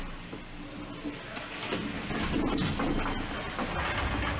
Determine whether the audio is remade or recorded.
recorded